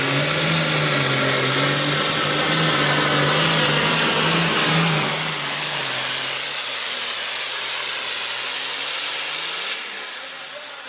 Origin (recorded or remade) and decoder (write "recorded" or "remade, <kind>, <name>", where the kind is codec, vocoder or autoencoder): recorded